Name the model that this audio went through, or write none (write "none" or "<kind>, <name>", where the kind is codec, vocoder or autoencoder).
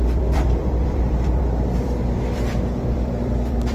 vocoder, BigVGAN v2